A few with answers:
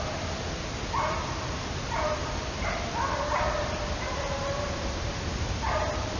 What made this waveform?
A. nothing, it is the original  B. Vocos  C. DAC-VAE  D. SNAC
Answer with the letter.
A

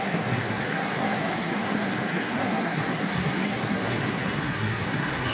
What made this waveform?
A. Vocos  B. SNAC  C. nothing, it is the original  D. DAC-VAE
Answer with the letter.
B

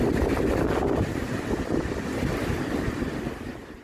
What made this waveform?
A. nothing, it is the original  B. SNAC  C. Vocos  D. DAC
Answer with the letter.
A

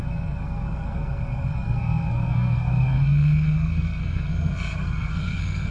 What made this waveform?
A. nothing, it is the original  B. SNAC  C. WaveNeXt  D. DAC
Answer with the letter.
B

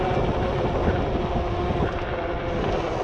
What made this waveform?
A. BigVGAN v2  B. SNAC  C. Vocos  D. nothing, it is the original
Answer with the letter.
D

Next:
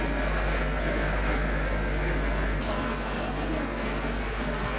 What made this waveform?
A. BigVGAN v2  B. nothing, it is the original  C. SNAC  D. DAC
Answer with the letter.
C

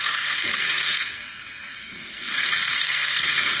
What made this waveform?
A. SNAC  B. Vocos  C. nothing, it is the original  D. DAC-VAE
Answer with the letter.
A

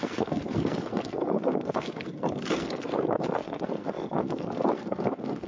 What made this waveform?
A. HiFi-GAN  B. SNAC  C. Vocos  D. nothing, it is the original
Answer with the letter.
B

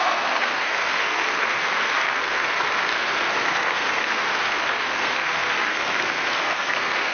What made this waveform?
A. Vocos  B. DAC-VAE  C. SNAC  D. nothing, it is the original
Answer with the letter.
C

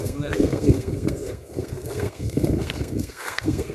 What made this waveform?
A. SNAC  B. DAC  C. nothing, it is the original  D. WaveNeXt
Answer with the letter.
A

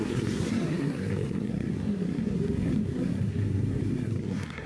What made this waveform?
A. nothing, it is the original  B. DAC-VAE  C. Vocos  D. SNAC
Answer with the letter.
D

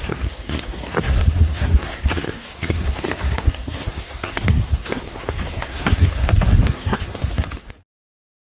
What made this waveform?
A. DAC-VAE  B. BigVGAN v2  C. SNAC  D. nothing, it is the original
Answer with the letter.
C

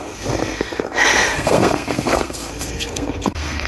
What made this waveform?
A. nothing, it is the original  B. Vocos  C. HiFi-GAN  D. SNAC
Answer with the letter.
D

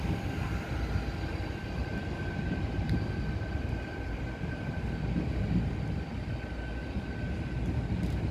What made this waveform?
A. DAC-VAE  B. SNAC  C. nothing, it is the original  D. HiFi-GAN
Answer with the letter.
C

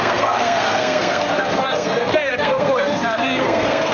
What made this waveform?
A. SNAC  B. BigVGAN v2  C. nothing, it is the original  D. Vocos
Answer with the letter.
A